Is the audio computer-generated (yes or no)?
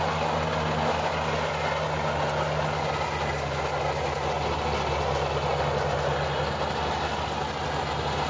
no